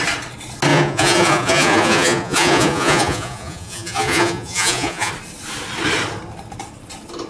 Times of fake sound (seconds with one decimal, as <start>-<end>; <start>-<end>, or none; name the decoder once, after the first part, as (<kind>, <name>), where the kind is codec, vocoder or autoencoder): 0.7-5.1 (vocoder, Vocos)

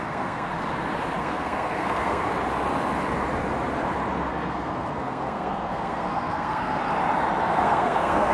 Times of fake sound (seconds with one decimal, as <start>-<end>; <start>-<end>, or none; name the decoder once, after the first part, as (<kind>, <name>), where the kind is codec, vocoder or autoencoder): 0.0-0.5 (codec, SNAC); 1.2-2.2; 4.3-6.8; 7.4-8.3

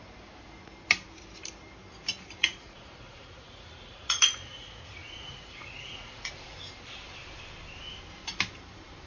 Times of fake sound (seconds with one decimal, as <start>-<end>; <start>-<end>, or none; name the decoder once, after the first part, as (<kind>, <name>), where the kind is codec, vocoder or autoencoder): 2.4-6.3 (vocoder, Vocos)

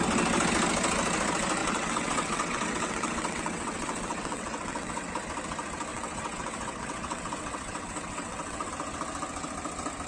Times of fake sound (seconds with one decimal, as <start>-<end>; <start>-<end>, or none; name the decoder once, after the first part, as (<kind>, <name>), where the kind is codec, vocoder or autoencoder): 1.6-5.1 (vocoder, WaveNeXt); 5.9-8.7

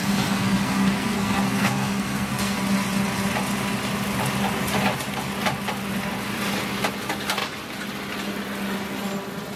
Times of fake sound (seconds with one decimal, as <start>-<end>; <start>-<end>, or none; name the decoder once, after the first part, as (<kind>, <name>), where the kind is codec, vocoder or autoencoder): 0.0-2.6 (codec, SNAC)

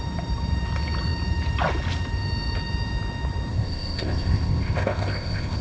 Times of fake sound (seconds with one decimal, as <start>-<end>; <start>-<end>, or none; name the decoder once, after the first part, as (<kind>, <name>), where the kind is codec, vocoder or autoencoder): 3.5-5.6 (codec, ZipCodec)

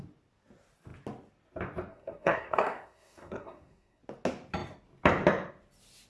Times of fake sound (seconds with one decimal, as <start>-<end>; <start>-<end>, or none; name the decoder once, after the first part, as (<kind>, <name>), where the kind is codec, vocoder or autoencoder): 1.9-4.0 (codec, SNAC)

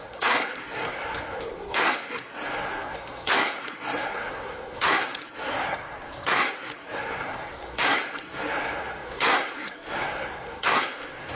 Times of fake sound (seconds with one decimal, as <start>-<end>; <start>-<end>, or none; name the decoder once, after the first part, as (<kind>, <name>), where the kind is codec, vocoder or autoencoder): 0.0-11.4 (codec, SNAC)